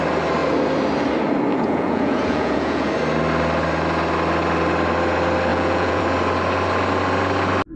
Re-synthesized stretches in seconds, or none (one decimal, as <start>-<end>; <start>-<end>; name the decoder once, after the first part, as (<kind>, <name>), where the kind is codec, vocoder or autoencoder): 1.5-2.9 (vocoder, Vocos); 5.5-6.0